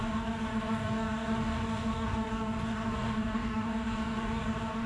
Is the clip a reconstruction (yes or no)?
yes